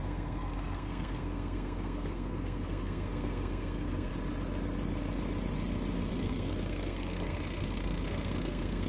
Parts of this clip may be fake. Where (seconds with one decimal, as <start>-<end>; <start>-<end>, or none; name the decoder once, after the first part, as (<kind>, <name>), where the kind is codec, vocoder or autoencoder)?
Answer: 0.0-4.1 (codec, SNAC); 6.1-8.9